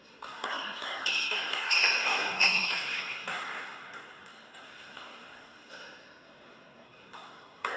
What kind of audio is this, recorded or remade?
remade